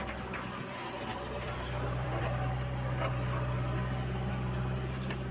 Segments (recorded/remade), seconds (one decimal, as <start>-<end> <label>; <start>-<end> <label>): 0.0-1.1 recorded; 1.1-4.3 remade; 4.3-5.3 recorded